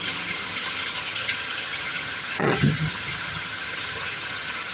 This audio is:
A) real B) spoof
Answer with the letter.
B